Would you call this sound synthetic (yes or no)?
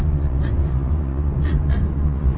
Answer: yes